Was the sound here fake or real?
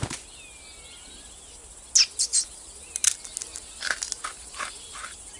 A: real